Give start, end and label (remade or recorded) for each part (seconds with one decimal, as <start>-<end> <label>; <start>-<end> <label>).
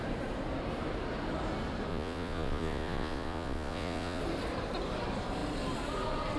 0.0-1.9 recorded; 1.9-4.2 remade; 4.2-6.4 recorded